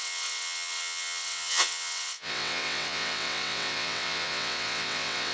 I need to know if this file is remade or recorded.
remade